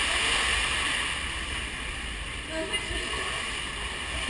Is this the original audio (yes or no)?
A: yes